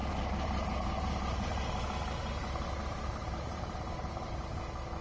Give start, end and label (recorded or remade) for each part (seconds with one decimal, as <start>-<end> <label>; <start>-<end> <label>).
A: 0.0-1.8 remade; 1.8-2.8 recorded; 2.8-4.5 remade; 4.5-5.0 recorded